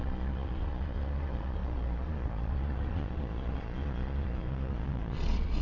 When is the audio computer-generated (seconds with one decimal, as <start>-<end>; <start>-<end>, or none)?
0.0-5.6